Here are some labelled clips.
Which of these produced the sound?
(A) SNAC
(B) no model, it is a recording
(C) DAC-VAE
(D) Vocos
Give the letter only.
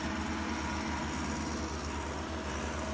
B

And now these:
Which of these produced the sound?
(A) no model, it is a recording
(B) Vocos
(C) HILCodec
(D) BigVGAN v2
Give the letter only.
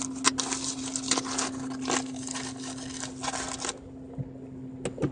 A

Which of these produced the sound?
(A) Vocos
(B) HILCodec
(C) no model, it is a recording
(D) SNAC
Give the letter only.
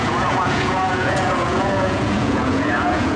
A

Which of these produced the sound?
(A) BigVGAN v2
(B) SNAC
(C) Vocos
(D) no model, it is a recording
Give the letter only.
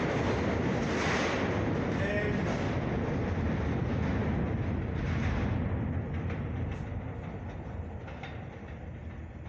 D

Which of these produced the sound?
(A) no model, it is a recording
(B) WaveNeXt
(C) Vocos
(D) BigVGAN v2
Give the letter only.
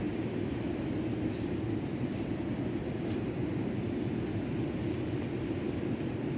A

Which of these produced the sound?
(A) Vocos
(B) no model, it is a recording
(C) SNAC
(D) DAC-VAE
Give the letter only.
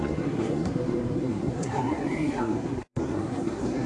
C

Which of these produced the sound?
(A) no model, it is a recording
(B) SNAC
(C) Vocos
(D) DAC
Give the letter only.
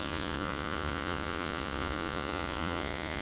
C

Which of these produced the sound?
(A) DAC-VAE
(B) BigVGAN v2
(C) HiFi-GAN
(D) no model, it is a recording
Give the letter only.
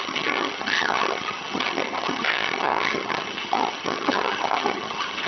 C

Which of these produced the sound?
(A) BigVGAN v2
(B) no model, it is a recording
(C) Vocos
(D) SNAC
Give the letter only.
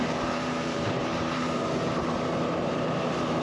A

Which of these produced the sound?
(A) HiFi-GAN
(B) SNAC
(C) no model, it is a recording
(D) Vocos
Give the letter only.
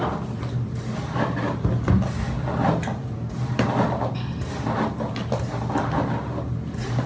C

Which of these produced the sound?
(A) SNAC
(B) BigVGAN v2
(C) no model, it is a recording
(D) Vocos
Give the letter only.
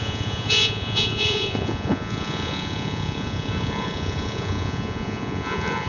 D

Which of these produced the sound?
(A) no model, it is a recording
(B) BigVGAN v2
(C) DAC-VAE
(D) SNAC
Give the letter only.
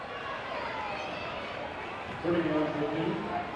A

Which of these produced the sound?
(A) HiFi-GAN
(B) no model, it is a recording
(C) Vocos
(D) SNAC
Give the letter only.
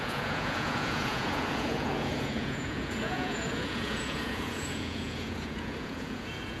C